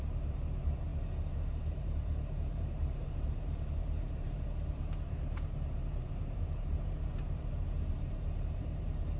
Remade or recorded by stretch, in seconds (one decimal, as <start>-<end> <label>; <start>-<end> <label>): 0.0-9.2 remade